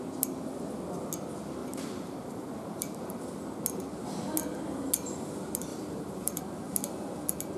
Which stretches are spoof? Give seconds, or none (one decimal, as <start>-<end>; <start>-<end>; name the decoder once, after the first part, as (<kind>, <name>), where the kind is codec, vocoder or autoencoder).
1.6-3.2 (vocoder, BigVGAN v2); 5.7-6.4

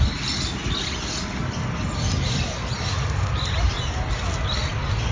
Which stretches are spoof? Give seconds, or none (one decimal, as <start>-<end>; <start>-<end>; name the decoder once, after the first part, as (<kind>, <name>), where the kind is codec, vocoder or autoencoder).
none